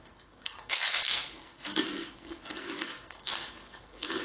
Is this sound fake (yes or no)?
yes